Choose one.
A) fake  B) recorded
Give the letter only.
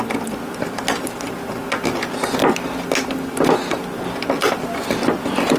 B